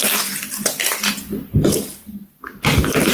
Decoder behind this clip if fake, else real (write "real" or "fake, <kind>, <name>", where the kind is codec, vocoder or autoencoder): real